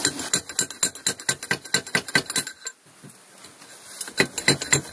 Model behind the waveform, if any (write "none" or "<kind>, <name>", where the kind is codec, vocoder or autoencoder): none